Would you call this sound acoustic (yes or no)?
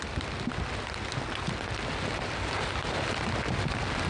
yes